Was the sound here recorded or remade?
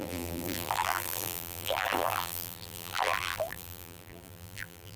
remade